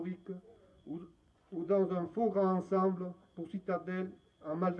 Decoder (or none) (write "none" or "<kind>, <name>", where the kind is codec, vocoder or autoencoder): vocoder, Vocos